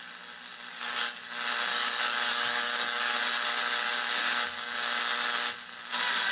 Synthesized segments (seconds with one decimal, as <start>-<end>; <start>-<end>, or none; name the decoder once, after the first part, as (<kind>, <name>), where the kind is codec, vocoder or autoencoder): 0.7-1.2 (codec, DAC); 1.7-3.2